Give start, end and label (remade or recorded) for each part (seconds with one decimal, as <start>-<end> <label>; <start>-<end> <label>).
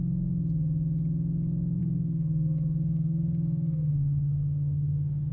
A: 0.0-1.8 recorded; 1.8-5.3 remade